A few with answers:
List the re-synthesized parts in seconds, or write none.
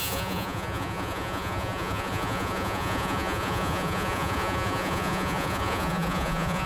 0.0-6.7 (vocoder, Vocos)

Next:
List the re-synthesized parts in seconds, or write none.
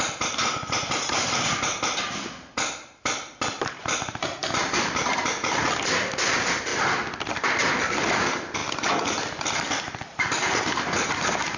0.0-11.6 (vocoder, BigVGAN v2)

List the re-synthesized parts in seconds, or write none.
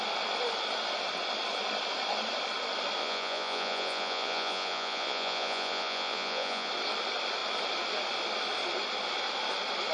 3.0-6.7 (vocoder, Vocos)